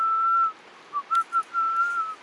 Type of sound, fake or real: real